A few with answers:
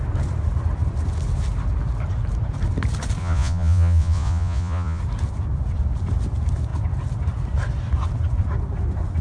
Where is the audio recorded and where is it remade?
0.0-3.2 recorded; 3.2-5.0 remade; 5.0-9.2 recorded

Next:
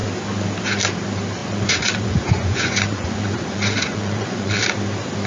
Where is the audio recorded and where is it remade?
0.0-1.4 recorded; 1.4-4.6 remade; 4.6-5.3 recorded

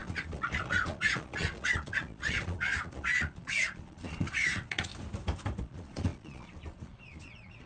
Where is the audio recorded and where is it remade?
0.0-4.9 remade; 4.9-5.6 recorded; 5.6-7.7 remade